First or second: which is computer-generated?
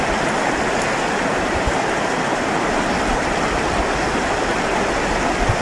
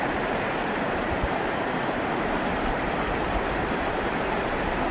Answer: second